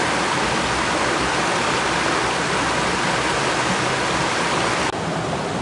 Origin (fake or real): real